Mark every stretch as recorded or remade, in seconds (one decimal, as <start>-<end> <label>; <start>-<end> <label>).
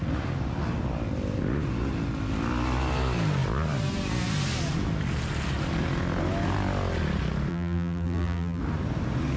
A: 0.0-7.5 recorded; 7.5-8.6 remade; 8.6-9.4 recorded